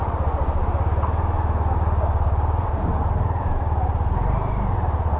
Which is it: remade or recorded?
recorded